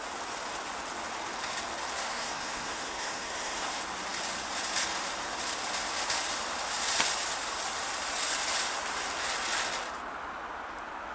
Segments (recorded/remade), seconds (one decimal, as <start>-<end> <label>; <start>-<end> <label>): 0.0-2.0 recorded; 2.0-3.8 remade; 3.8-11.1 recorded